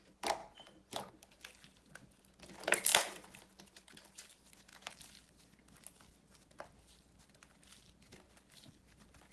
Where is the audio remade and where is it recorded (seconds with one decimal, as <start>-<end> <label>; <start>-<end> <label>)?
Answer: 0.0-2.9 recorded; 2.9-4.3 remade; 4.3-9.3 recorded